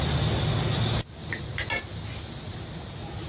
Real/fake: real